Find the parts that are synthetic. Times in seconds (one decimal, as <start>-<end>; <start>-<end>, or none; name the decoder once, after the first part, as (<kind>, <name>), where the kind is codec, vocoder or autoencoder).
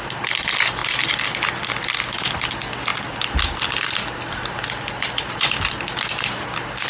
none